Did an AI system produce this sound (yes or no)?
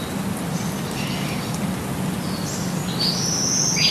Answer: no